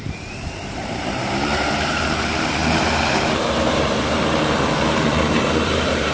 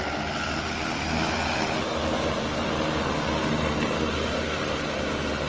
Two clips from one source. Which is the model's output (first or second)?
first